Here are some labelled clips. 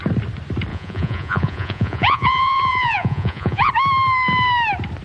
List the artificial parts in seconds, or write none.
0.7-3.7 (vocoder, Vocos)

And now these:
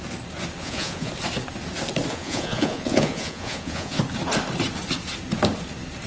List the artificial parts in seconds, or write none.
0.6-1.1 (vocoder, Vocos); 2.1-4.0

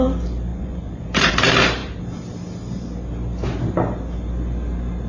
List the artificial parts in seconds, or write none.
0.5-1.3 (vocoder, Vocos)

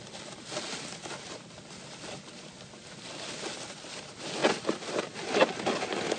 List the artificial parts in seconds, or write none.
none